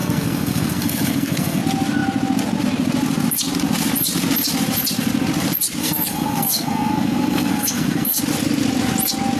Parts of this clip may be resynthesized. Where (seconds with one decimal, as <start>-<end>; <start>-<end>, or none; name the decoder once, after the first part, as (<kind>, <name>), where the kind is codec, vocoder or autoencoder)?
0.0-1.6 (codec, SNAC); 5.8-8.2